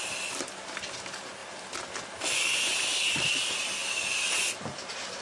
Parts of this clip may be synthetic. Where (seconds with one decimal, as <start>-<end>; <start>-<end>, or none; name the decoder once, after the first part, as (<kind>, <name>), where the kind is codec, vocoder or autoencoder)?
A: 1.4-2.4 (vocoder, BigVGAN v2)